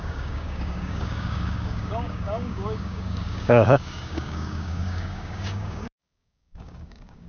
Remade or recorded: remade